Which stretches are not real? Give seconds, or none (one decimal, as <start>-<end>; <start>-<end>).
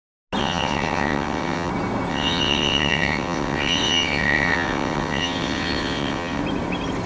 0.4-1.7; 2.1-6.4